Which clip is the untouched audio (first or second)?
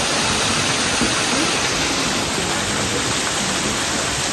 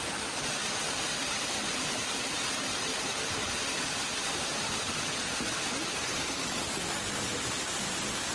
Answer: first